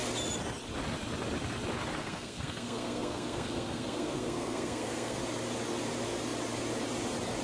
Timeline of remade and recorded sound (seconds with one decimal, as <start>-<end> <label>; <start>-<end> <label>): 0.0-2.0 recorded; 2.0-5.2 remade; 5.2-7.4 recorded